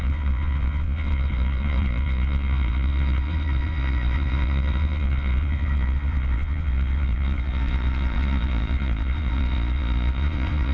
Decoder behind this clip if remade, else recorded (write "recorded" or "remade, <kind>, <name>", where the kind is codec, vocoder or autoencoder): remade, vocoder, Vocos